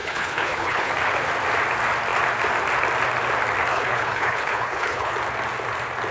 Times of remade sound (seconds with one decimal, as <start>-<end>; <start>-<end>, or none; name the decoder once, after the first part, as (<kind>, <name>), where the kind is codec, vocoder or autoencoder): 0.0-0.9 (codec, HILCodec); 3.7-5.1